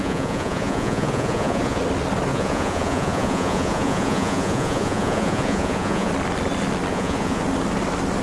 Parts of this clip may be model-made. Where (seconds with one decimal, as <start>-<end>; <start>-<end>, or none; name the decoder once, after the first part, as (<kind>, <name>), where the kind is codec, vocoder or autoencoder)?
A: 0.0-1.8 (vocoder, Vocos); 2.3-6.1; 6.9-7.4